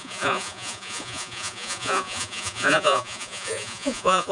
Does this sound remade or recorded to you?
remade